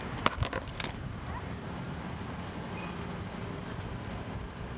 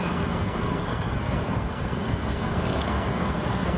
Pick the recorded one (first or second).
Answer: first